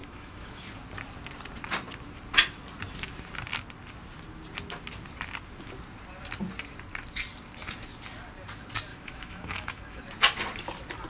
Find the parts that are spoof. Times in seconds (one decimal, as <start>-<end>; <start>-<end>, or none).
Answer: 0.0-0.6; 8.9-10.0